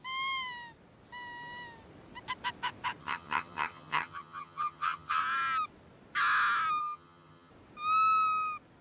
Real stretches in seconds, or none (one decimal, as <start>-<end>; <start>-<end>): 0.0-3.0; 5.2-6.8; 7.5-8.8